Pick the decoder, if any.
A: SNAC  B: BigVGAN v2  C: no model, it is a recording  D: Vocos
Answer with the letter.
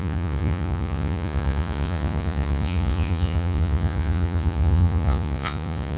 D